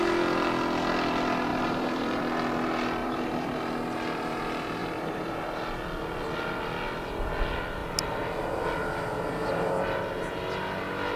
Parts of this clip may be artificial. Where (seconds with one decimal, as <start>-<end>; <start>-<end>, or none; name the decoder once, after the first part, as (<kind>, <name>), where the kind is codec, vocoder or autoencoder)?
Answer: 1.5-2.2 (vocoder, BigVGAN v2); 3.0-3.6; 4.8-5.3